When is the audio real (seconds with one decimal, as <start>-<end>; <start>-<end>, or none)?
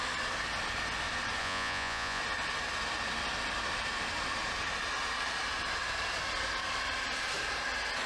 0.0-1.4; 2.2-8.1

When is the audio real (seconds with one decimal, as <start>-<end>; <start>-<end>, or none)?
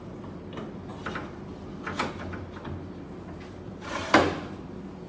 0.0-5.1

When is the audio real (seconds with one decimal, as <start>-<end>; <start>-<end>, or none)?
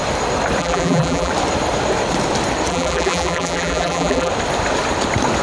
0.0-0.6; 1.3-2.7; 4.3-5.4